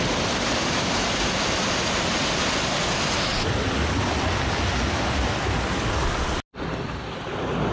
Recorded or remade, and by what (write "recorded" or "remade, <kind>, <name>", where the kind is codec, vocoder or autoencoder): recorded